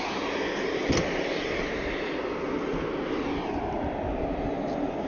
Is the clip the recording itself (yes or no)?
yes